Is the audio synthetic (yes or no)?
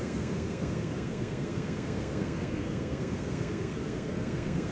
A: yes